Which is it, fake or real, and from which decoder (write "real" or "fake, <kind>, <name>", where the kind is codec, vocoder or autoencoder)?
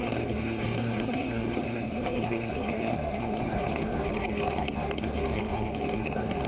fake, codec, SNAC